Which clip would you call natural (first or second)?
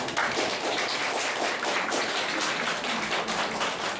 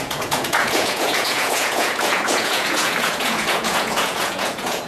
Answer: first